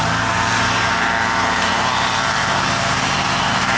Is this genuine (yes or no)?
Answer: yes